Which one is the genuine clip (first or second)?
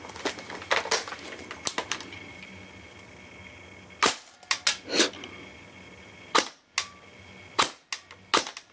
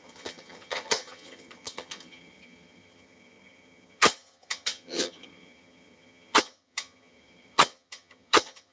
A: first